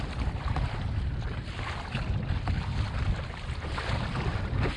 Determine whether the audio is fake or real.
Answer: real